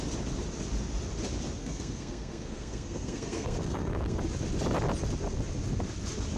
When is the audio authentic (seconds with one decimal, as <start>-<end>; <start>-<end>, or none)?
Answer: 0.0-1.6; 4.2-6.4